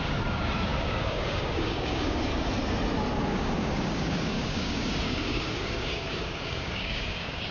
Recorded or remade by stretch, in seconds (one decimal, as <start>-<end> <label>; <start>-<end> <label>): 0.0-2.3 remade; 2.3-3.2 recorded; 3.2-7.5 remade